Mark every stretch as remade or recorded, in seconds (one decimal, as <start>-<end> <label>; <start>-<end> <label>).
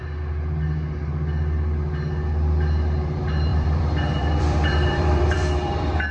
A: 0.0-3.5 recorded; 3.5-6.1 remade